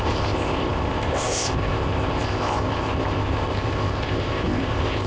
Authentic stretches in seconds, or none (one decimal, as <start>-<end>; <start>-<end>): none